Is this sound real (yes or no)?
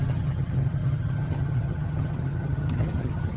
no